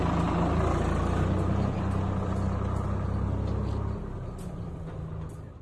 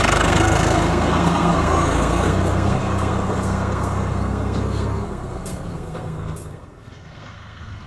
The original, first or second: first